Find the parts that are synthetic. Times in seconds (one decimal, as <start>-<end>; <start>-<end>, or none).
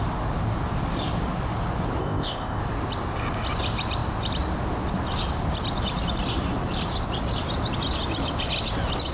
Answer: 2.0-2.6